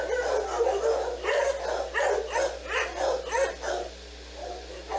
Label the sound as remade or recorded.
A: recorded